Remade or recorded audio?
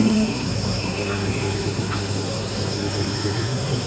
remade